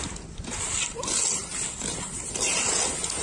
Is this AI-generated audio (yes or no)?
no